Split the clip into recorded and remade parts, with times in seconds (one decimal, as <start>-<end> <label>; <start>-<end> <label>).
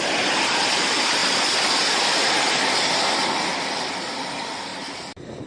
0.0-5.5 recorded